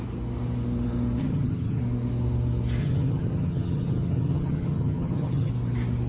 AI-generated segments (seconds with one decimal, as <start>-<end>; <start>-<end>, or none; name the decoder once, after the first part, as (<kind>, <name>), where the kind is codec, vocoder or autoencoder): 1.2-1.8 (vocoder, HiFi-GAN); 2.8-5.5